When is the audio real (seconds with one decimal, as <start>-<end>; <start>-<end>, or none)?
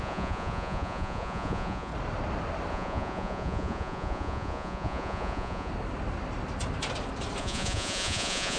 1.9-2.7; 5.7-7.4